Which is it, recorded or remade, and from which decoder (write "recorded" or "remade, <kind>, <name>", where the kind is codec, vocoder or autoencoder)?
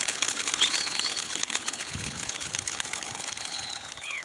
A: remade, codec, HILCodec